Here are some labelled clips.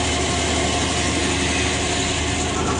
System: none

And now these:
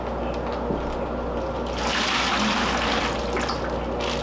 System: none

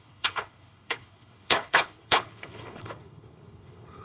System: codec, HILCodec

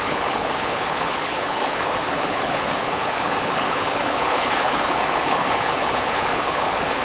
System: codec, HILCodec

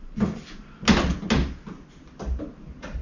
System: none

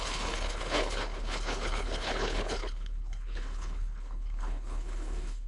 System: codec, HILCodec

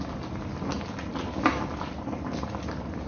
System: none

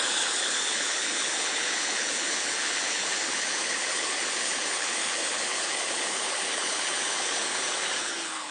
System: codec, HILCodec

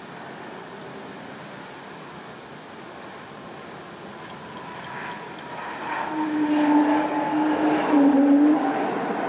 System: none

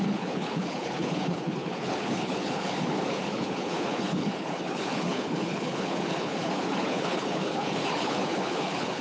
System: codec, HILCodec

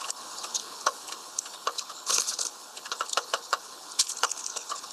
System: codec, HILCodec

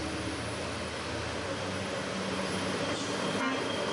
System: none